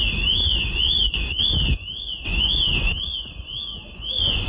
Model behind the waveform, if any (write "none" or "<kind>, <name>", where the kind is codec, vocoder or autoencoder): vocoder, Vocos